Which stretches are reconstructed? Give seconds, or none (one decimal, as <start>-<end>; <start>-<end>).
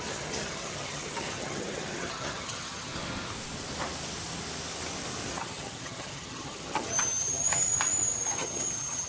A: 0.0-2.9; 5.3-7.7; 8.4-9.1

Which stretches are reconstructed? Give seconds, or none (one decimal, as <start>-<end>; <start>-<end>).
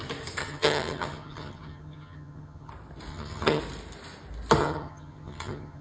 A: 0.4-2.7; 3.1-3.6; 4.6-5.8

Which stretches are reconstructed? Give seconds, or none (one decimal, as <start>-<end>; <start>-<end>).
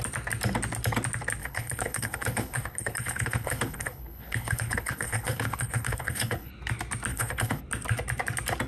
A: 1.4-6.5; 7.1-7.6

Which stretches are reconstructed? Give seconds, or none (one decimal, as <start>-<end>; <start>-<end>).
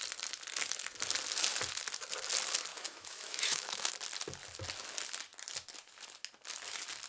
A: 2.7-3.9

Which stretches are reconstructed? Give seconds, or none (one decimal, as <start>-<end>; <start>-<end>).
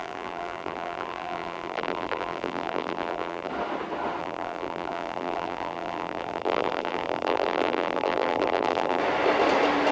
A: 0.0-3.5; 4.2-9.0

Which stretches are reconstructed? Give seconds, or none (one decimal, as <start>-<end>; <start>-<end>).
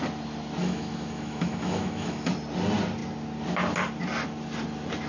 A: 0.6-2.3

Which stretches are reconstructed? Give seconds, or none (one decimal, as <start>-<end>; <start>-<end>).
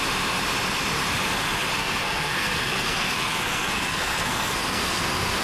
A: 1.8-5.0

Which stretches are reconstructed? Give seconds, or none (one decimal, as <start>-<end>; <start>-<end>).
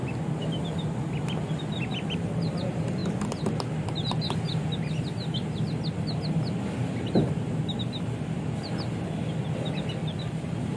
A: 10.0-10.8